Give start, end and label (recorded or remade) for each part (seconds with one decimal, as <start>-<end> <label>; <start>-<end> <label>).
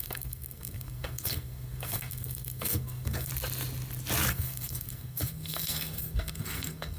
0.0-3.3 remade; 3.3-4.3 recorded; 4.3-7.0 remade